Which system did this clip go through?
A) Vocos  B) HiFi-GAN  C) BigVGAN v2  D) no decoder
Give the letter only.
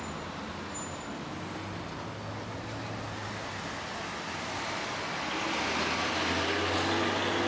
D